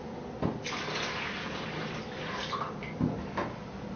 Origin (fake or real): real